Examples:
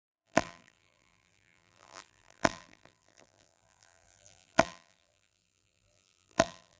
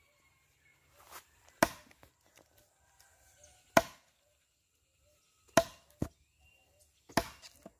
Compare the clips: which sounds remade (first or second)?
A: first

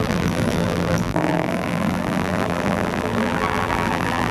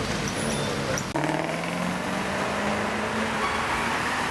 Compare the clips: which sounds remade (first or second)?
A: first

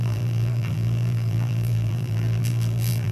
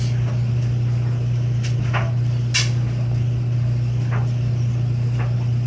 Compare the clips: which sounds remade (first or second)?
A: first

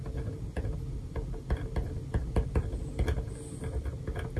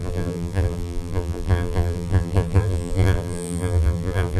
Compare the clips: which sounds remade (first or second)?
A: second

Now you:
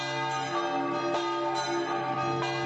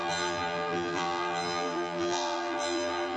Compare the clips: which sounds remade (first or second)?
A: second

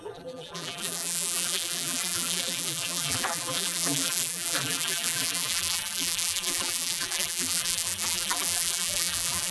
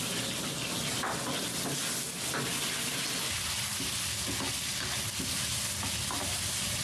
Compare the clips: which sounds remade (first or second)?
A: first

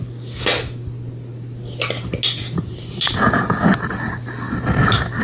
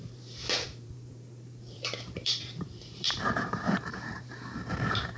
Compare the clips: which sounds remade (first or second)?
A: second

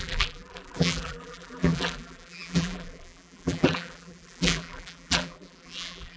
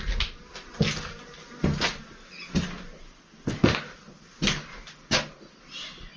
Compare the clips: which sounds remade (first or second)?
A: first